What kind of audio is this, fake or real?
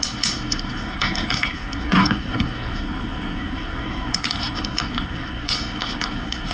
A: fake